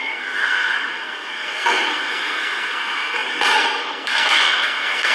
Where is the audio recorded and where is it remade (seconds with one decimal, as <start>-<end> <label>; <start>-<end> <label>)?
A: 0.0-5.1 remade